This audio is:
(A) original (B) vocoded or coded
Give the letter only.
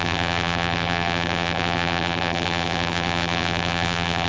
B